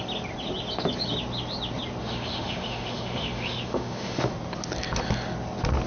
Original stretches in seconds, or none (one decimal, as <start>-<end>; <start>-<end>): 0.0-2.0; 4.3-5.9